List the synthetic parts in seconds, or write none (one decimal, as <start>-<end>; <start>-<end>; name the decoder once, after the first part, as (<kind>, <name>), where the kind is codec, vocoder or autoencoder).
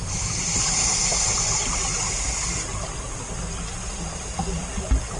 none